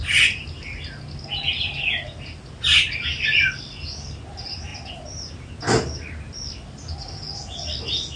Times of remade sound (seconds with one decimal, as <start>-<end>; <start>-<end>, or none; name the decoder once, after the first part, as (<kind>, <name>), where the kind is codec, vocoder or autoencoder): 4.7-5.6 (vocoder, BigVGAN v2)